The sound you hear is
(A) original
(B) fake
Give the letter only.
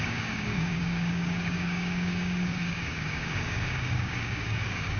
B